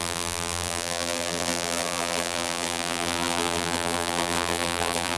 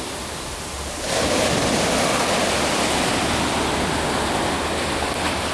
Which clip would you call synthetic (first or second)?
first